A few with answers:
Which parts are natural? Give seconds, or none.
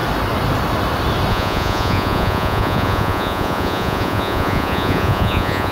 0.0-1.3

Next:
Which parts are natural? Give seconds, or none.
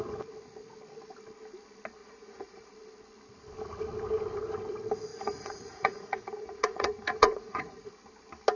0.0-2.0; 2.7-5.1; 7.9-8.6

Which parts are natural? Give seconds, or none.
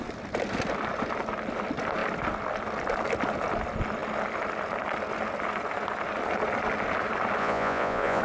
0.0-7.4